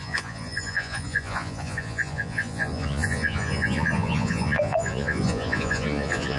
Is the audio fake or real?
fake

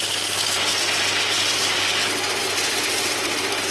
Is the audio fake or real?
real